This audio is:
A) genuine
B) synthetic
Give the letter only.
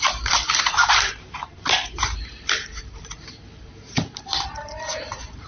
B